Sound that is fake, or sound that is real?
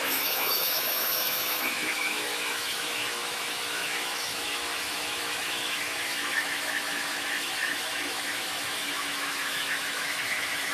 fake